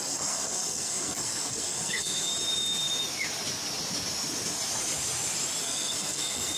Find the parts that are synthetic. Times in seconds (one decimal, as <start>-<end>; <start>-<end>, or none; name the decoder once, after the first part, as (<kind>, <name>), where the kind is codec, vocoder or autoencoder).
0.0-2.3 (codec, SNAC); 5.6-6.6